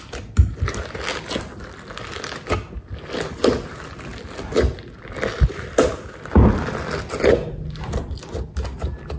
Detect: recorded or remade recorded